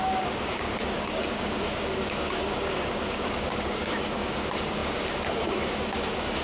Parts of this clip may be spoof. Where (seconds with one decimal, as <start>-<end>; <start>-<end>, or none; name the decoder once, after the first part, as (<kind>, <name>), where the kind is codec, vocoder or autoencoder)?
0.0-6.4 (codec, DAC)